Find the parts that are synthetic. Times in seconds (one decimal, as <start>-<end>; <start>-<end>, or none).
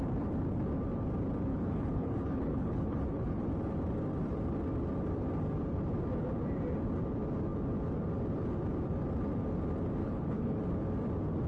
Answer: 1.5-3.4; 10.0-10.6